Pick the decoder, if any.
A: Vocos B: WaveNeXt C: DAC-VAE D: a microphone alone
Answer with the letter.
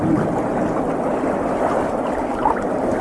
D